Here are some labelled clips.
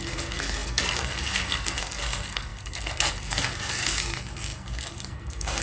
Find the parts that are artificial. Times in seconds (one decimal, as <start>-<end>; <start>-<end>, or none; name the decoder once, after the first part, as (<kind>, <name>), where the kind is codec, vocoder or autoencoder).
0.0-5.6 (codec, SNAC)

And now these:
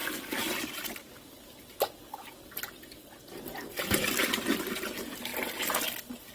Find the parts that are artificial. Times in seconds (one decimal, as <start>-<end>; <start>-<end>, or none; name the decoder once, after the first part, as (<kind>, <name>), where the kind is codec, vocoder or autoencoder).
none

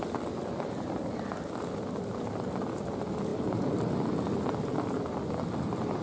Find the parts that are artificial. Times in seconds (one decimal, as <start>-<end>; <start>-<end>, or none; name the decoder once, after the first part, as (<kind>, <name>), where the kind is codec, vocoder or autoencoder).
none

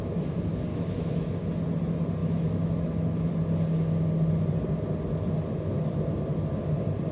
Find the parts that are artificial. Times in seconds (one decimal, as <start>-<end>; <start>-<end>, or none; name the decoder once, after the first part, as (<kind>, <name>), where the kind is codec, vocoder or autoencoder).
0.7-1.3 (autoencoder, DAC-VAE); 2.2-3.3